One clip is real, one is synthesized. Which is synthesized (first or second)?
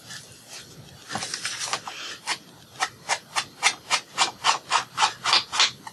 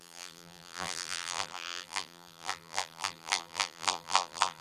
second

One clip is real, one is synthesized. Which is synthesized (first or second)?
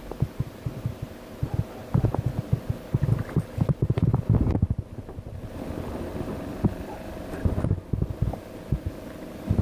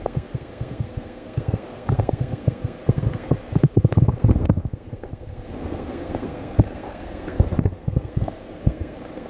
second